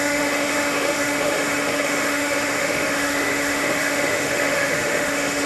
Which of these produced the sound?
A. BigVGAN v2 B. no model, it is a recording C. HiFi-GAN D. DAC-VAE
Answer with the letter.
D